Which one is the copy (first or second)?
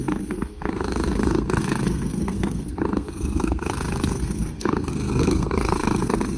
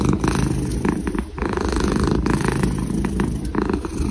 first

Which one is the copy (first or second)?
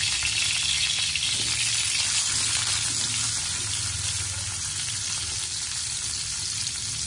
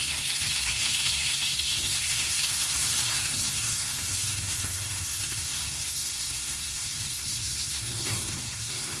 second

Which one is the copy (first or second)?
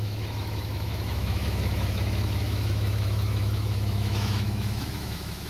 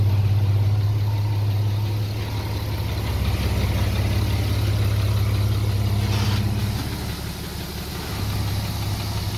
first